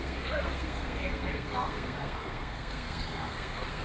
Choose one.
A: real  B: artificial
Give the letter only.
B